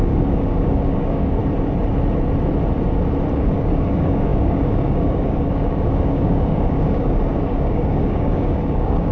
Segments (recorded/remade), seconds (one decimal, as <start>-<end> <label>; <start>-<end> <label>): 0.0-1.4 remade; 1.4-3.3 recorded; 3.3-9.1 remade